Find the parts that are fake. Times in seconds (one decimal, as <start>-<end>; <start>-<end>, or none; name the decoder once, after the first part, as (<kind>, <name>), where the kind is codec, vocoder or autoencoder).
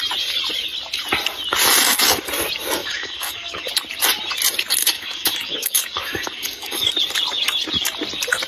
2.8-3.7 (codec, DAC); 4.8-6.9